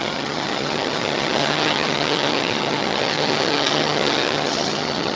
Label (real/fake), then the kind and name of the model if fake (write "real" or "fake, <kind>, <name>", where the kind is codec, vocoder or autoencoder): fake, vocoder, HiFi-GAN